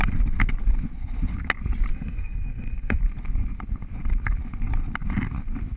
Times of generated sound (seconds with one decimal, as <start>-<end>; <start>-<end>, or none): 1.9-3.0